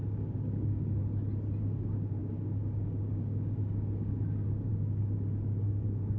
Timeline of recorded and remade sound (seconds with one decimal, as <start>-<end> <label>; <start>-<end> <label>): 0.0-1.0 remade; 1.0-1.6 recorded; 1.6-6.2 remade